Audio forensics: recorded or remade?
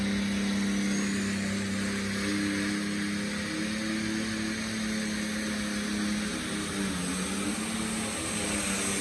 recorded